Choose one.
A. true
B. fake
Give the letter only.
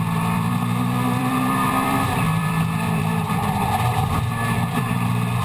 B